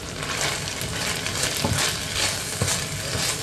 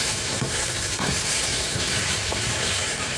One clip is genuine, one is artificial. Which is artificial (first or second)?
second